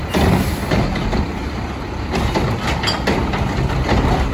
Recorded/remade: recorded